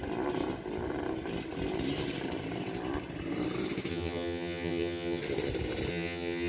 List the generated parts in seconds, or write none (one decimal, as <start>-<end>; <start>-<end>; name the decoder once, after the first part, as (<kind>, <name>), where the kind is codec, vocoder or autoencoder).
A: 3.9-5.2 (vocoder, HiFi-GAN); 5.9-6.5